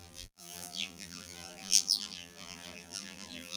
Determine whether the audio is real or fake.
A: fake